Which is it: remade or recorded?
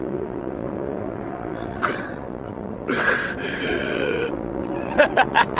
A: remade